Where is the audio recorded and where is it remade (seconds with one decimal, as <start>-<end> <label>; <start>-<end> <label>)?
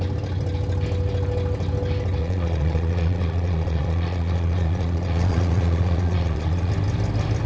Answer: 0.0-2.2 recorded; 2.2-6.7 remade; 6.7-7.5 recorded